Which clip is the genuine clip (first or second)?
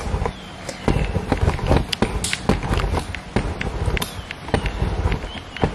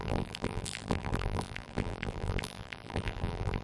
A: first